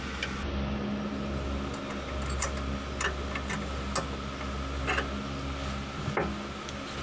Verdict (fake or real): real